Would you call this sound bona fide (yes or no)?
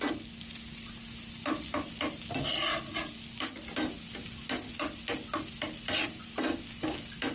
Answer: yes